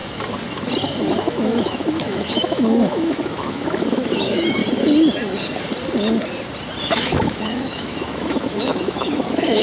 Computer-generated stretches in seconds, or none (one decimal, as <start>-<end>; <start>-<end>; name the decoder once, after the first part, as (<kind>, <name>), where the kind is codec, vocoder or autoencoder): 1.1-4.6 (autoencoder, DAC-VAE); 6.8-9.6

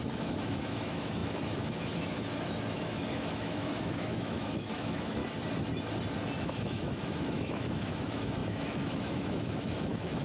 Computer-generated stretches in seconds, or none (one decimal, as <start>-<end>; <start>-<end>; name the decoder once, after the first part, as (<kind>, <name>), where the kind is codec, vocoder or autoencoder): 0.0-5.2 (autoencoder, DAC-VAE); 6.4-10.2

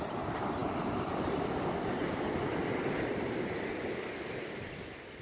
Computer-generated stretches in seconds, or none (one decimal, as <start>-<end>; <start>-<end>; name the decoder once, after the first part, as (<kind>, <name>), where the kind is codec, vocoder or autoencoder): 0.6-1.6 (vocoder, BigVGAN v2)

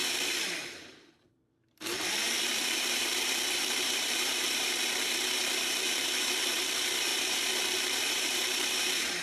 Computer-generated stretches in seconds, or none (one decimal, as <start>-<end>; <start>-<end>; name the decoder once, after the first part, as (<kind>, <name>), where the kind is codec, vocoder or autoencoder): 0.7-9.2 (vocoder, BigVGAN v2)

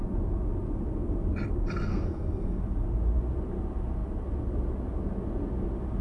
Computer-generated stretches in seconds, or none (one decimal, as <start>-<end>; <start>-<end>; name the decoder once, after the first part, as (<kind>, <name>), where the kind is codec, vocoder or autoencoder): 1.9-2.6 (codec, SNAC)

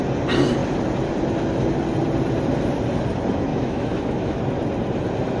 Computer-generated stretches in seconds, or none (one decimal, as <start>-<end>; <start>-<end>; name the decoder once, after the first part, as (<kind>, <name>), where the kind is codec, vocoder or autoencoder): 3.5-4.4 (autoencoder, DAC-VAE)

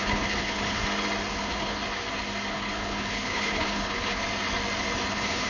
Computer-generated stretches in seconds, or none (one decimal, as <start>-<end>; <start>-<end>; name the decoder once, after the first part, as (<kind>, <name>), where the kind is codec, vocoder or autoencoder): 0.0-0.8 (codec, HILCodec); 1.3-1.8; 2.5-4.2; 5.1-5.5